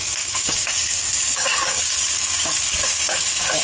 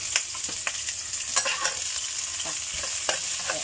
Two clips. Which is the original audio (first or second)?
second